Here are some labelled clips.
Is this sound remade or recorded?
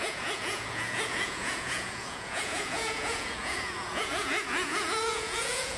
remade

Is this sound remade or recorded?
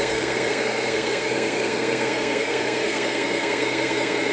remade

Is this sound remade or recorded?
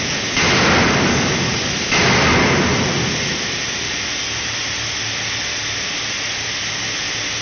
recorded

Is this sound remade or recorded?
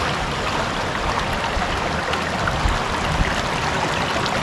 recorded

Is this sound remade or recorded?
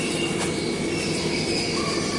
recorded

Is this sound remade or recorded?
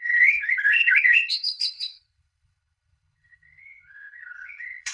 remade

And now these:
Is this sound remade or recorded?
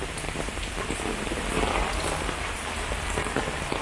recorded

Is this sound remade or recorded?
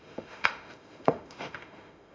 remade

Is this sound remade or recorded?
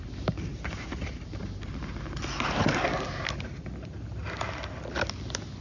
recorded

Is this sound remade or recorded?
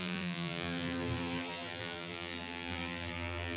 remade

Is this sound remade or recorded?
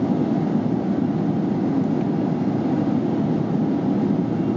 recorded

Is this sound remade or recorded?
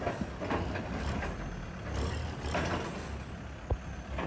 recorded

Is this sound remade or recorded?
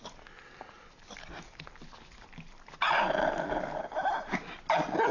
recorded